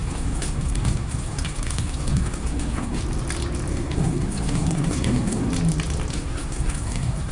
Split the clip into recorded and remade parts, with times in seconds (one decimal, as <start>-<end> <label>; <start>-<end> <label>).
0.0-3.0 remade; 3.0-3.7 recorded; 3.7-5.5 remade; 5.5-6.1 recorded; 6.1-7.3 remade